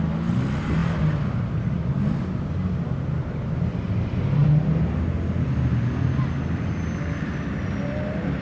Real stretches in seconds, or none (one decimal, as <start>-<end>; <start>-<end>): 0.0-8.4